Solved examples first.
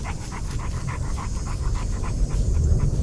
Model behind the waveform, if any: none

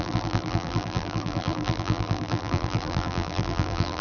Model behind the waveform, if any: vocoder, BigVGAN v2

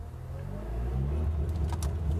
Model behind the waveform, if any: none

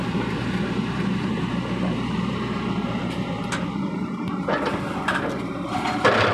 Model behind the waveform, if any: vocoder, BigVGAN v2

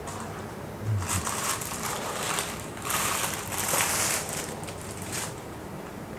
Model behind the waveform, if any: vocoder, BigVGAN v2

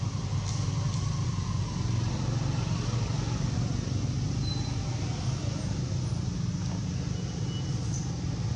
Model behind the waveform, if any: none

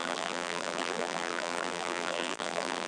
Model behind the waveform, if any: vocoder, BigVGAN v2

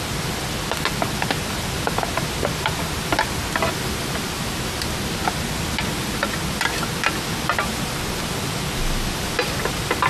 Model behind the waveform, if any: none